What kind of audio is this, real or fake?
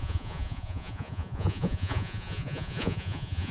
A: fake